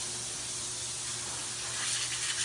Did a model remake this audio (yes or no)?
no